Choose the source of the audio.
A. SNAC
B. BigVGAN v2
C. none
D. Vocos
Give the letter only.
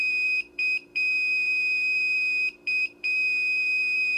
B